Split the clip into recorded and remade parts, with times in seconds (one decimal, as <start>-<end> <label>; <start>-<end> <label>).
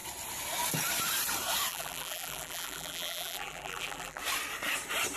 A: 0.0-1.7 recorded; 1.7-4.2 remade; 4.2-5.2 recorded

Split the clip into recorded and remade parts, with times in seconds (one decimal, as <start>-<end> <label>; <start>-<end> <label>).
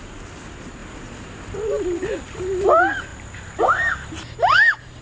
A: 0.0-0.8 recorded; 0.8-2.7 remade; 2.7-5.0 recorded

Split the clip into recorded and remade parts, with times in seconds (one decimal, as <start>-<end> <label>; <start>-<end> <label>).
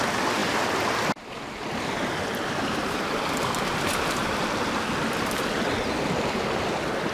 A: 0.0-7.1 recorded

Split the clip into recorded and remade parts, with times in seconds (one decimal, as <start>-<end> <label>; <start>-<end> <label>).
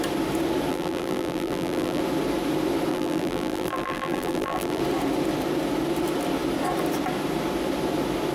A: 0.0-0.7 recorded; 0.7-2.0 remade; 2.0-2.9 recorded; 2.9-4.8 remade; 4.8-8.3 recorded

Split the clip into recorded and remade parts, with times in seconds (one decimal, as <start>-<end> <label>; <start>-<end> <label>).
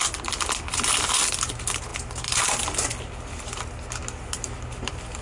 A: 0.0-5.2 recorded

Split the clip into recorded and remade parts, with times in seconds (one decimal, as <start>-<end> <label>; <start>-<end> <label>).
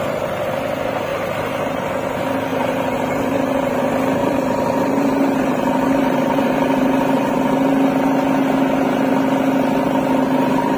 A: 0.0-1.1 recorded; 1.1-1.9 remade; 1.9-2.5 recorded; 2.5-3.8 remade; 3.8-4.2 recorded; 4.2-7.3 remade; 7.3-10.8 recorded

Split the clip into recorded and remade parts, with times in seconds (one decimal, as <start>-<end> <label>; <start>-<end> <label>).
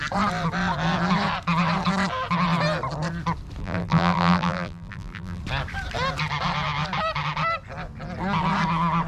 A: 0.0-3.6 recorded; 3.6-5.4 remade; 5.4-9.1 recorded